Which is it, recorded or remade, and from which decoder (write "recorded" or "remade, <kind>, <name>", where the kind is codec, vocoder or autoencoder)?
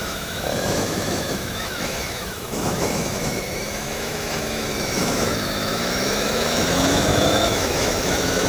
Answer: remade, autoencoder, DAC-VAE